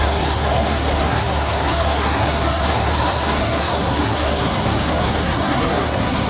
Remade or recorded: remade